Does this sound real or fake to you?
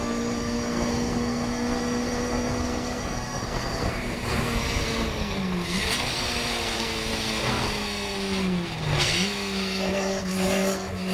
fake